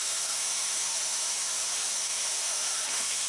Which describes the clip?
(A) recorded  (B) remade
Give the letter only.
B